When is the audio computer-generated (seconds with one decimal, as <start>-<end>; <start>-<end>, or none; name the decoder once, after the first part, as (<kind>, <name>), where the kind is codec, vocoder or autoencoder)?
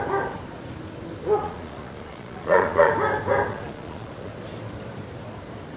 1.4-2.9 (vocoder, Vocos); 3.5-4.3